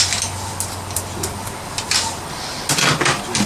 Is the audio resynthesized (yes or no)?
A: no